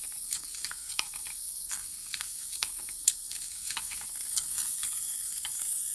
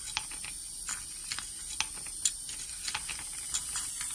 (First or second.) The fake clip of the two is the first